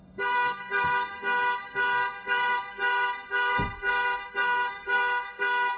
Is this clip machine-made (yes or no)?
yes